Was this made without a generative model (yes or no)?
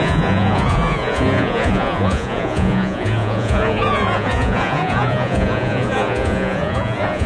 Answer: no